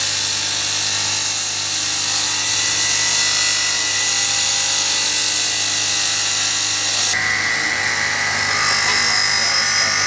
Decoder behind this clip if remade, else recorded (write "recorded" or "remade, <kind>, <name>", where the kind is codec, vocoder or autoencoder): recorded